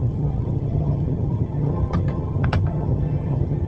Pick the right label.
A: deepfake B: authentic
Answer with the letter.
A